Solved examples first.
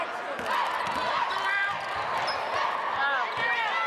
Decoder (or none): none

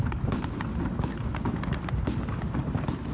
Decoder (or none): none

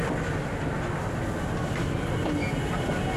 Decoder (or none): none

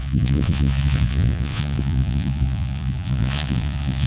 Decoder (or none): vocoder, Vocos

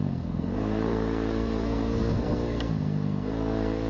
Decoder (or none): codec, SNAC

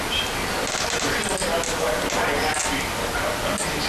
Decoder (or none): none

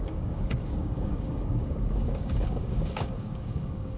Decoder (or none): codec, DAC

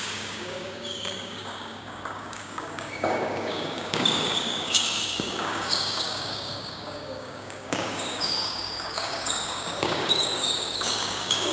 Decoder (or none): codec, DAC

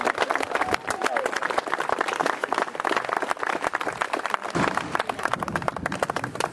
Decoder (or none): none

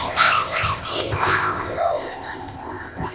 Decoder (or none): codec, ZipCodec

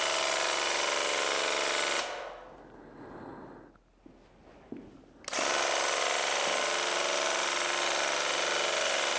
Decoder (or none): none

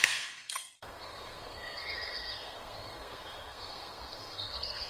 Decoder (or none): codec, SNAC